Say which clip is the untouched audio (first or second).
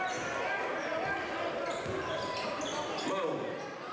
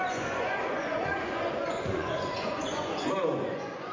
first